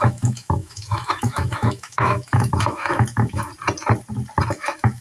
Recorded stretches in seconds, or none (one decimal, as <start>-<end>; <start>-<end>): 3.5-4.5